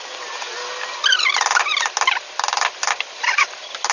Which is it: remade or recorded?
recorded